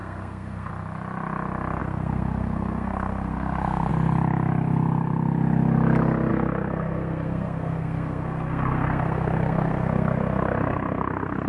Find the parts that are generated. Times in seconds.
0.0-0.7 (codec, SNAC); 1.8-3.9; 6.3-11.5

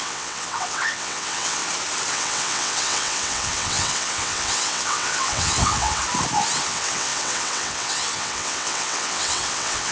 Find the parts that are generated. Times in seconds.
0.0-1.6 (vocoder, WaveNeXt); 2.1-6.0; 6.6-9.9

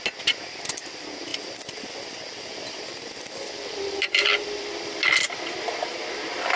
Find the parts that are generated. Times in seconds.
1.3-5.3 (vocoder, BigVGAN v2)

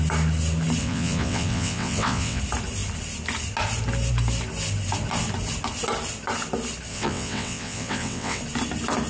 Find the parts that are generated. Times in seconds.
0.8-2.4 (vocoder, WaveNeXt); 6.9-8.4

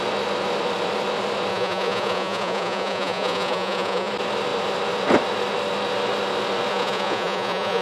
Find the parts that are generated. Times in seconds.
1.5-4.1 (vocoder, Vocos); 6.7-7.8

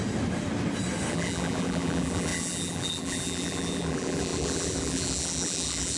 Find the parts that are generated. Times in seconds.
1.1-6.0 (vocoder, BigVGAN v2)

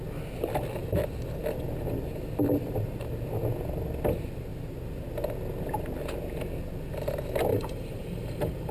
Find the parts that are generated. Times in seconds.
7.5-8.7 (vocoder, BigVGAN v2)

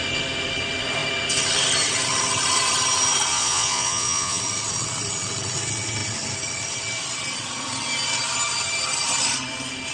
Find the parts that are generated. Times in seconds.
3.3-4.4 (vocoder, Vocos)